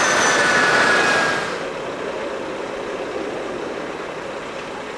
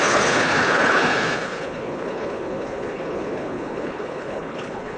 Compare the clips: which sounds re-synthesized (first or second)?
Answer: second